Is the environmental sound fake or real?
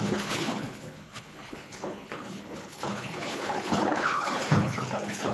fake